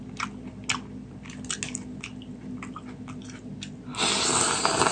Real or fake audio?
real